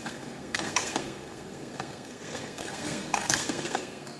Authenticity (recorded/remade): remade